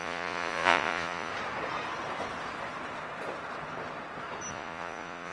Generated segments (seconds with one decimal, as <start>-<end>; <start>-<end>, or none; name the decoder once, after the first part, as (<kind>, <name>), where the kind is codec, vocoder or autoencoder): 0.0-1.3 (vocoder, Vocos); 4.5-5.3